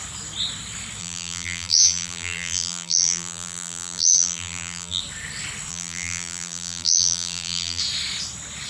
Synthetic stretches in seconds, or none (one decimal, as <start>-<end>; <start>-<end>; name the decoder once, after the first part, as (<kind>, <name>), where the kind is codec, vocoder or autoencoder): 1.0-5.0 (vocoder, BigVGAN v2); 5.7-7.8